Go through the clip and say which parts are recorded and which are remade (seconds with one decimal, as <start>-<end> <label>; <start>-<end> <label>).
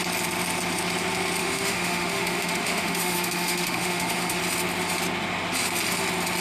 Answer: 0.0-1.4 recorded; 1.4-4.4 remade; 4.4-6.4 recorded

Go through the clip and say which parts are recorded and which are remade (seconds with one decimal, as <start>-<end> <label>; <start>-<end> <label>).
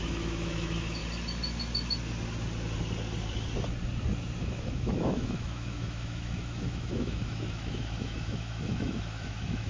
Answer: 0.0-1.0 remade; 1.0-4.4 recorded; 4.4-9.7 remade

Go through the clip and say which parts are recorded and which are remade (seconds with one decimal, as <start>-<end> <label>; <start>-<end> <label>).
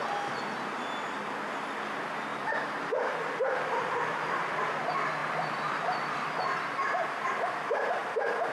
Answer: 0.0-2.3 recorded; 2.3-4.5 remade; 4.5-5.2 recorded; 5.2-6.4 remade; 6.4-7.0 recorded; 7.0-7.5 remade; 7.5-8.5 recorded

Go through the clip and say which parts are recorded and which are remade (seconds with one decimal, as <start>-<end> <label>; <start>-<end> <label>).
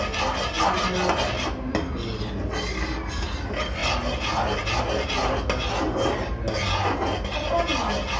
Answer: 0.0-8.2 recorded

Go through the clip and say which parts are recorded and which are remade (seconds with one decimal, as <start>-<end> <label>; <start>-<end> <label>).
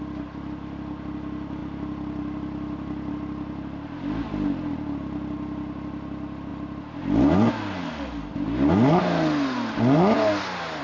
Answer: 0.0-10.8 recorded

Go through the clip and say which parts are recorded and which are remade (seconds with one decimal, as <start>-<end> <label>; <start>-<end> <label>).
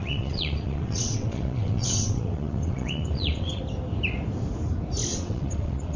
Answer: 0.0-3.6 remade; 3.6-5.1 recorded; 5.1-6.0 remade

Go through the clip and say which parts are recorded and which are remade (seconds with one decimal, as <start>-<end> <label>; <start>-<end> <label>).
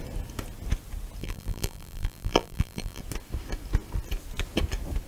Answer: 0.0-1.2 recorded; 1.2-3.0 remade; 3.0-5.1 recorded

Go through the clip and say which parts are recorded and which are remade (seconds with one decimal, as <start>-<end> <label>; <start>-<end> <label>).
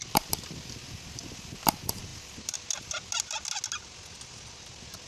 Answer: 0.0-5.1 recorded